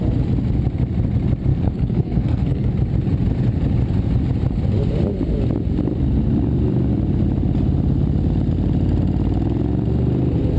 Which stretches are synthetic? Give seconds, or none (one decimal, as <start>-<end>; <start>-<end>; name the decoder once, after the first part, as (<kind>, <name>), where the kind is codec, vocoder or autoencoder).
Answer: 1.5-2.7 (codec, SNAC)

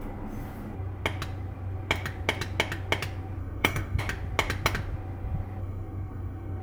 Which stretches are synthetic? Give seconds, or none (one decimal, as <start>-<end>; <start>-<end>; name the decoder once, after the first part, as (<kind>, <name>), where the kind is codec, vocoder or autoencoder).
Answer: 3.4-4.0 (codec, SNAC); 5.6-6.6

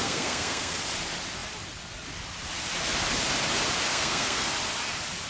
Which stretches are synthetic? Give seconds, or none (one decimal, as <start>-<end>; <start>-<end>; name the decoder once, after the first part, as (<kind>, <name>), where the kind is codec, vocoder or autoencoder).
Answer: 0.0-0.8 (codec, SNAC); 3.9-4.5

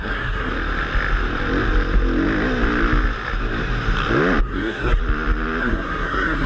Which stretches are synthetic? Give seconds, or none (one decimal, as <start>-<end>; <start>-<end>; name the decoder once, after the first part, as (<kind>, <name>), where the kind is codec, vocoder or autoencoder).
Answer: 0.0-0.5 (codec, SNAC); 4.4-5.0; 5.6-6.5

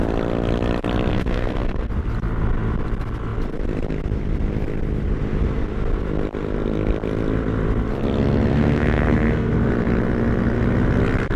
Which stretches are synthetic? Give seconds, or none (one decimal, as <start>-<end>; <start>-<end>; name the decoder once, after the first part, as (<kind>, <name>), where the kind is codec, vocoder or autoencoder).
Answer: 1.1-1.9 (codec, SNAC); 8.5-9.5

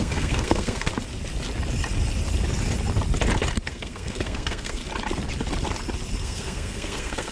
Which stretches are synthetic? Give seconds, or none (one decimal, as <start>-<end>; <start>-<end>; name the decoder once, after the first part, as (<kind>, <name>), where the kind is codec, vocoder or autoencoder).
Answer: 0.0-0.9 (codec, SNAC); 3.7-4.8; 6.2-7.3